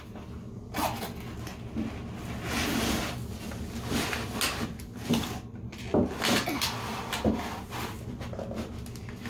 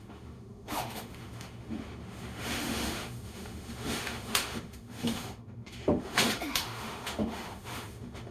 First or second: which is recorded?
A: first